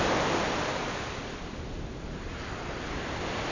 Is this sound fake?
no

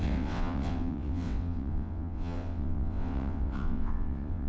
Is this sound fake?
yes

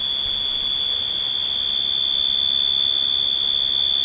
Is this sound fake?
no